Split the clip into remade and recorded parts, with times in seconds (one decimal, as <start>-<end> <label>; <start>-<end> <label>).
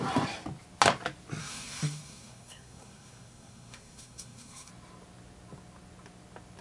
0.0-1.4 recorded; 1.4-4.7 remade; 4.7-6.6 recorded